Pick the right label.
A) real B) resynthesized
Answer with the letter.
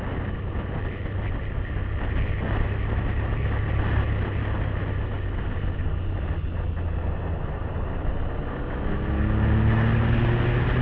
A